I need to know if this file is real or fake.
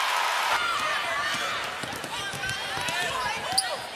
real